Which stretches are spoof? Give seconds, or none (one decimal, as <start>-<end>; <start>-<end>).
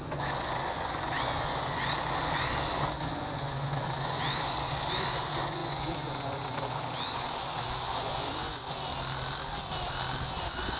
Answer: 0.0-8.9; 10.2-10.8